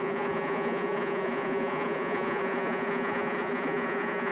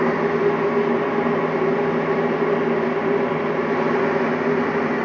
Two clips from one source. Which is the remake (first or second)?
first